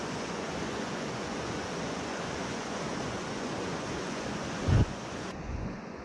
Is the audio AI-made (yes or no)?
yes